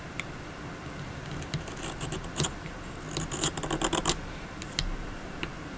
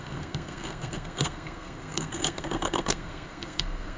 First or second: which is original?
first